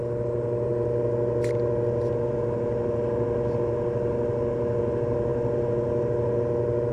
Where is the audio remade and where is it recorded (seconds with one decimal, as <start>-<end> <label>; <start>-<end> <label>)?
0.0-6.9 recorded